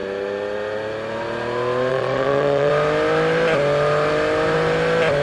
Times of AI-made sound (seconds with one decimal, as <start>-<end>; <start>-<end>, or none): 1.9-2.7